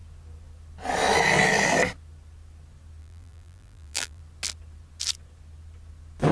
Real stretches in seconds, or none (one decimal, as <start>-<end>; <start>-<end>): 0.0-3.0; 4.2-6.3